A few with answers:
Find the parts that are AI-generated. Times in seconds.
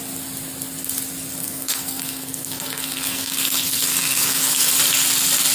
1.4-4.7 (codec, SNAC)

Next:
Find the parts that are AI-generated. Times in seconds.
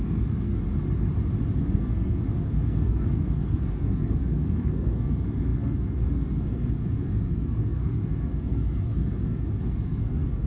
0.0-0.5 (codec, SNAC); 1.6-10.5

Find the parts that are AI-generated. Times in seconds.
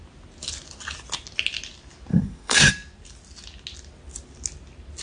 2.1-2.7 (codec, SNAC)